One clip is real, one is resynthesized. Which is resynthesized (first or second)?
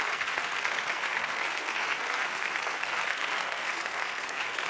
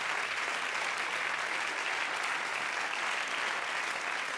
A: first